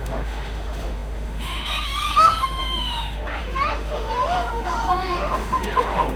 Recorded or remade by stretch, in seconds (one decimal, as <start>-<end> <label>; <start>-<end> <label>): 0.0-6.2 remade